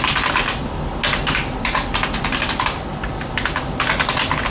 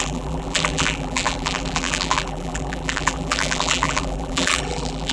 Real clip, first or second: first